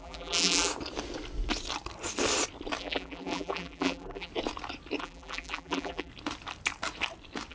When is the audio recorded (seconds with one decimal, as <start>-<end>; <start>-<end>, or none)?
0.7-2.8; 4.3-5.0; 6.1-7.5